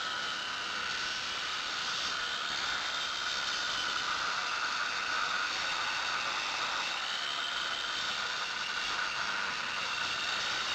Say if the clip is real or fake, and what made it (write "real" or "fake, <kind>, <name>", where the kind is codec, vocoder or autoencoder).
real